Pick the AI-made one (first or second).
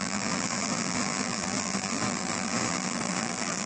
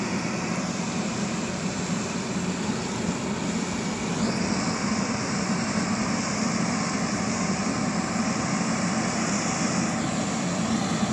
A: first